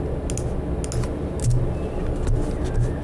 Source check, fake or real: real